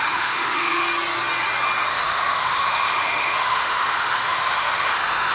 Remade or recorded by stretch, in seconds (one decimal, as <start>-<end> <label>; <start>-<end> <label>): 0.0-0.8 remade; 0.8-1.9 recorded; 1.9-5.3 remade